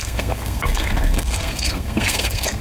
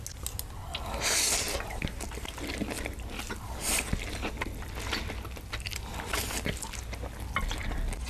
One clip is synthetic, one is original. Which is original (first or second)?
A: second